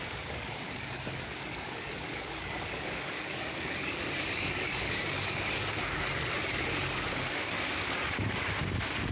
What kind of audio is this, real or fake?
fake